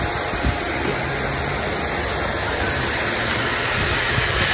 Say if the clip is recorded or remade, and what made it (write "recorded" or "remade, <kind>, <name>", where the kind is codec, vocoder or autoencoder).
recorded